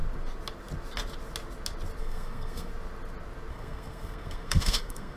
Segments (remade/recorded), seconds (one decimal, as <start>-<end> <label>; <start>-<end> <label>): 0.0-2.0 recorded; 2.0-2.7 remade; 2.7-3.5 recorded; 3.5-5.2 remade